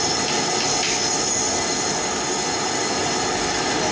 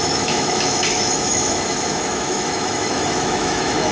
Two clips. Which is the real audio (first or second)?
first